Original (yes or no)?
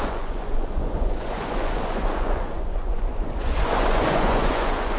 no